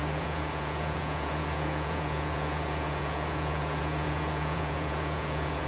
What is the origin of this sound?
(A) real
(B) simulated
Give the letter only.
B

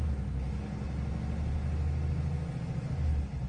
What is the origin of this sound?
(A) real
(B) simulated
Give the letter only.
A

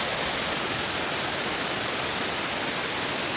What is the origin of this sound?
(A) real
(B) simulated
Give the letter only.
A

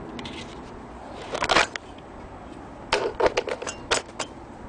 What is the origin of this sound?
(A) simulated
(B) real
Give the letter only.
B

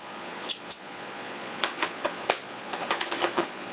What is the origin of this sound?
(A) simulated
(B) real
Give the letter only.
A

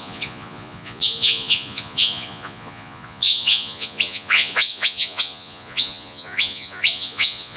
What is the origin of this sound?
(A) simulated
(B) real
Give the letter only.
A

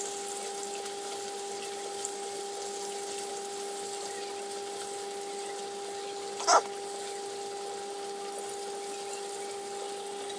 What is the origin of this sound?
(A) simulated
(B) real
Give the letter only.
B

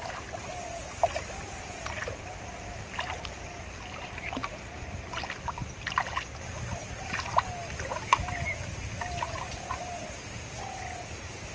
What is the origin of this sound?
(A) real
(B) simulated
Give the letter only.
A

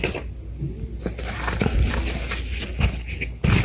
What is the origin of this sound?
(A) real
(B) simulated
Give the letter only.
A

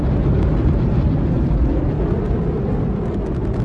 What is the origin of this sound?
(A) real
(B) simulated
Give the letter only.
A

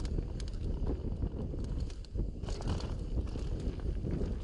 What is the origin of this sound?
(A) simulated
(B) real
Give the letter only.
B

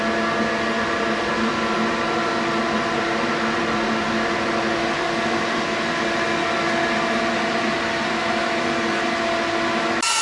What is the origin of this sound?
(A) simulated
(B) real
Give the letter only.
B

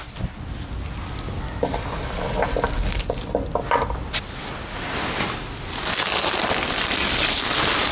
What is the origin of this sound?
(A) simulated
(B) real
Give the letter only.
B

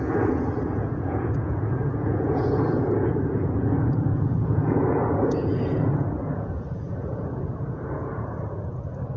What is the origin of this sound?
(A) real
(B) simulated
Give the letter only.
B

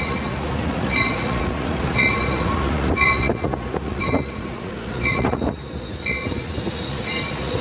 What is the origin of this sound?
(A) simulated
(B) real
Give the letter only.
A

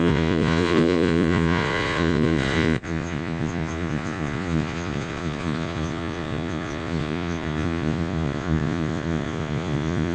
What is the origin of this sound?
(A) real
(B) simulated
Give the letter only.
B